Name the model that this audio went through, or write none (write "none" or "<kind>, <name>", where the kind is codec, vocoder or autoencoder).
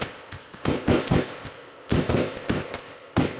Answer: codec, ZipCodec